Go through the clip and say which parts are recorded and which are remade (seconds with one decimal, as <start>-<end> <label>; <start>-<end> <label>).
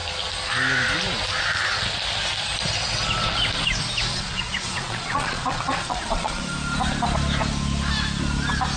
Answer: 0.0-4.1 recorded; 4.1-6.4 remade; 6.4-8.8 recorded